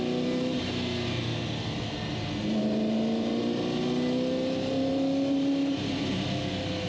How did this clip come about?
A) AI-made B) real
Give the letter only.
B